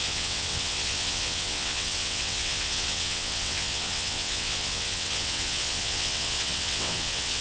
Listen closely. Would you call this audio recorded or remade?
remade